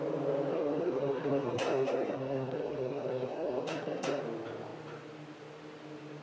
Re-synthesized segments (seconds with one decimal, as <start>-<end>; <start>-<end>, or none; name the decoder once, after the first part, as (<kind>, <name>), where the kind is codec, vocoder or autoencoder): 0.5-4.2 (codec, SNAC)